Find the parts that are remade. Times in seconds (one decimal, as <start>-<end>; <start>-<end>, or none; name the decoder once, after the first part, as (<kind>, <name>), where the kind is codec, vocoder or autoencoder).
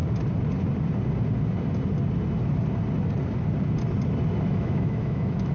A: 4.5-5.5 (autoencoder, DAC-VAE)